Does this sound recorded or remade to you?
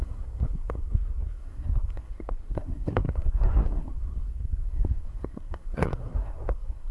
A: remade